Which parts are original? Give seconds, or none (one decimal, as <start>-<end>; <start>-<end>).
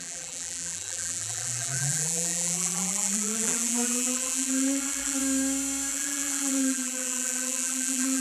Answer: 5.2-5.9